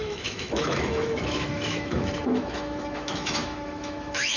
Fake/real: fake